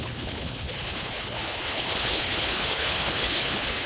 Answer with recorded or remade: remade